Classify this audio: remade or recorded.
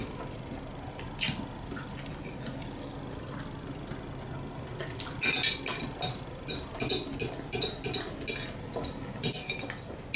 recorded